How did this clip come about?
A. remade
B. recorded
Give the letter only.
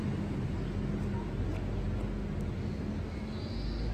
B